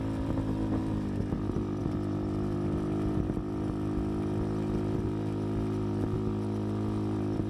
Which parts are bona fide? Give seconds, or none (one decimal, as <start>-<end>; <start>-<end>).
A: 0.0-7.5